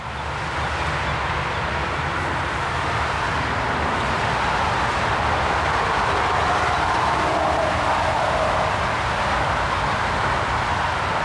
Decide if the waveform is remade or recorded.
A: recorded